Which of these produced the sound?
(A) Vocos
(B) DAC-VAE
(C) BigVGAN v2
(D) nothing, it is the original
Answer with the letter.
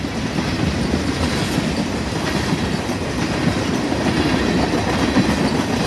D